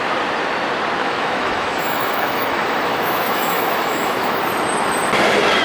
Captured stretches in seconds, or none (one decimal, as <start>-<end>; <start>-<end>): 0.0-1.0; 4.4-5.6